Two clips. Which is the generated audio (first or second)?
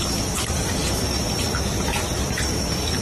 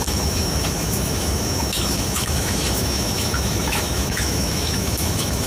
second